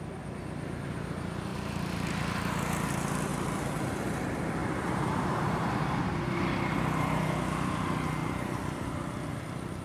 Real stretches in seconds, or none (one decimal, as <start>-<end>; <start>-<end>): 0.0-1.5; 2.1-3.3; 3.9-4.6; 6.1-9.8